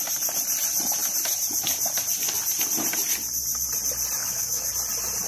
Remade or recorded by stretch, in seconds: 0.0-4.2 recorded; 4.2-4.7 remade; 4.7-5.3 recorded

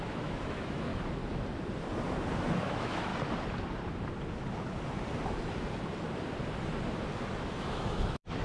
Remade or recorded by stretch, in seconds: 0.0-0.9 remade; 0.9-2.6 recorded; 2.6-3.1 remade; 3.1-7.4 recorded; 7.4-8.4 remade

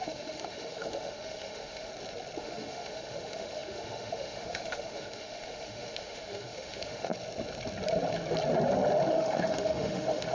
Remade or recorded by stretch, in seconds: 0.0-1.9 remade; 1.9-2.4 recorded; 2.4-7.1 remade; 7.1-9.1 recorded; 9.1-10.3 remade